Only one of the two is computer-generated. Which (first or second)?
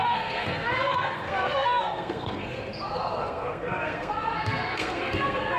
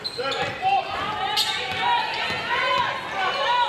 first